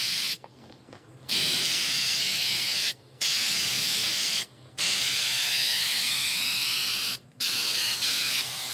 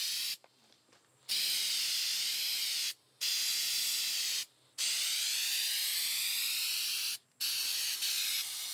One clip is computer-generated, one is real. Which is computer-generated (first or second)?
first